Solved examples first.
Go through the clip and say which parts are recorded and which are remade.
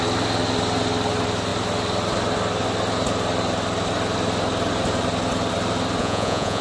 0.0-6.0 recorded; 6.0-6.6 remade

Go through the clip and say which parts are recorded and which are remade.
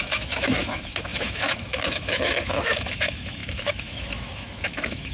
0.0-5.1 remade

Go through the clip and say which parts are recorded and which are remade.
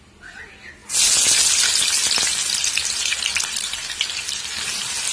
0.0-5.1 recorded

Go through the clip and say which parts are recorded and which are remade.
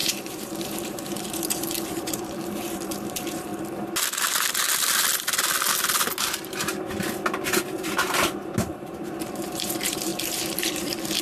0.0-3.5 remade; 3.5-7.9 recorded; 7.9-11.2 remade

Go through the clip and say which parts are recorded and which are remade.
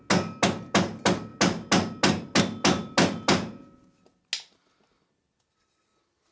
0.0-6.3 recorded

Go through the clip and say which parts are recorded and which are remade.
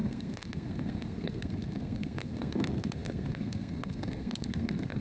0.0-5.0 remade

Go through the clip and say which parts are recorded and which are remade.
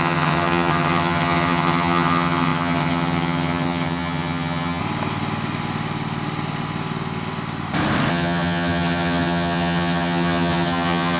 0.0-4.8 remade; 4.8-8.1 recorded; 8.1-11.2 remade